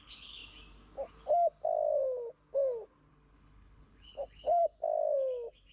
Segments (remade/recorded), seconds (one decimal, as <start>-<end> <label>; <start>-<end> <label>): 0.0-0.4 remade; 0.4-3.1 recorded; 3.1-4.6 remade; 4.6-5.7 recorded